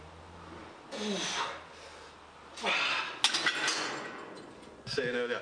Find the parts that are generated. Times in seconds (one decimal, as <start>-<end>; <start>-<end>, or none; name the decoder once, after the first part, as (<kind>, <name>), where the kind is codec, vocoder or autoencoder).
3.7-5.0 (vocoder, Vocos)